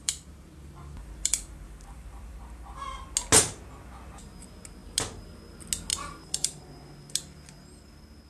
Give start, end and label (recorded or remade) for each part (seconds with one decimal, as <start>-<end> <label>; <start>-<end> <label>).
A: 0.0-2.4 remade; 2.4-5.9 recorded; 5.9-7.1 remade; 7.1-8.3 recorded